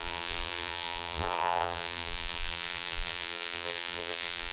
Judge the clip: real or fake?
fake